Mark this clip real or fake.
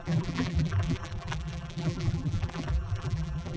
fake